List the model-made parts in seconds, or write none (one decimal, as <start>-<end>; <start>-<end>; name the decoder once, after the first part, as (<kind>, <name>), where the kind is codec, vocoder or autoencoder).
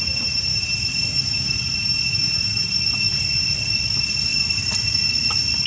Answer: 0.5-2.8 (vocoder, BigVGAN v2)